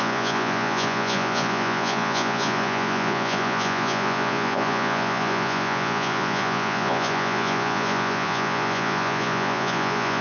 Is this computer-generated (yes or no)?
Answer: yes